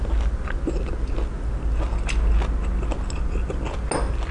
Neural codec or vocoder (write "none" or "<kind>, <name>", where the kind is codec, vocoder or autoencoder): none